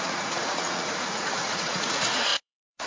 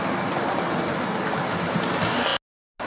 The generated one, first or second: first